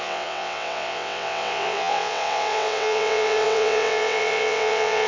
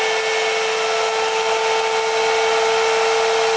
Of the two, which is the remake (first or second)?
first